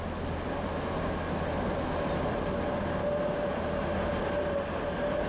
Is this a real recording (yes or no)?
yes